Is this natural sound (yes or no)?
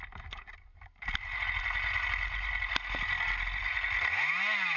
yes